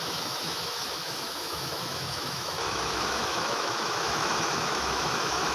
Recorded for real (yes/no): no